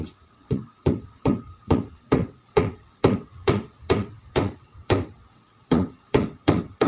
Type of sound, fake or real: fake